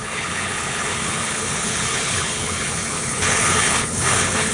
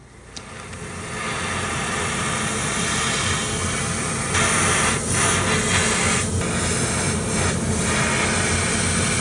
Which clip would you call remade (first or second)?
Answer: first